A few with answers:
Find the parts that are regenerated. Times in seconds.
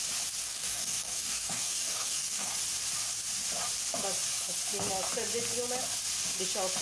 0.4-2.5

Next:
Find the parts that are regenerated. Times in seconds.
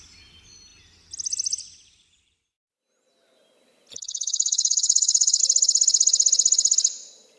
3.9-5.4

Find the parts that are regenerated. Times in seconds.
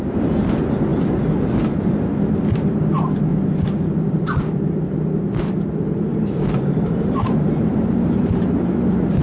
6.1-7.5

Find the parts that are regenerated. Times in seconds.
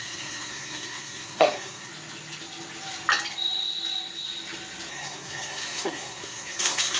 0.0-1.9; 4.9-7.0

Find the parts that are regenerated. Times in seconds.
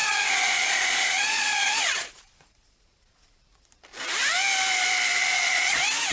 0.0-3.7; 5.2-6.1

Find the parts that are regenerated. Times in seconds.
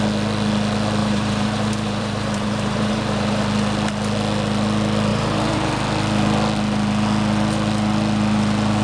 1.0-3.4; 5.1-5.7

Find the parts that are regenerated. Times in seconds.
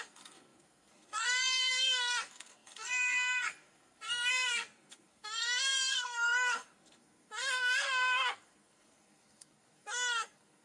0.0-10.6